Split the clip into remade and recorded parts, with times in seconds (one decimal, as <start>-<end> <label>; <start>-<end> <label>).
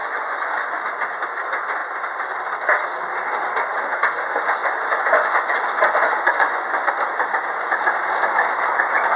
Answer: 0.0-0.8 remade; 0.8-4.6 recorded; 4.6-6.9 remade; 6.9-9.2 recorded